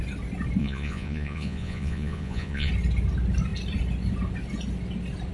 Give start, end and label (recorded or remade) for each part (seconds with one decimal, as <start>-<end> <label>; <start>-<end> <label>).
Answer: 0.0-0.6 recorded; 0.6-2.7 remade; 2.7-5.3 recorded